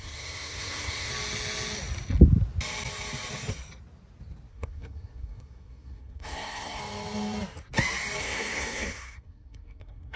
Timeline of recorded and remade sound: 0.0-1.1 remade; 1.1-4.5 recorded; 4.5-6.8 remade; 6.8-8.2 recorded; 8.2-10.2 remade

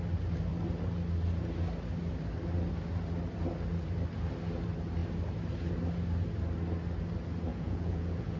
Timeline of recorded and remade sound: 0.0-7.5 recorded; 7.5-8.4 remade

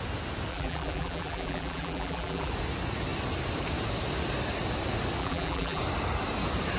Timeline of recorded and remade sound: 0.0-0.5 recorded; 0.5-2.5 remade; 2.5-5.2 recorded; 5.2-5.8 remade; 5.8-6.8 recorded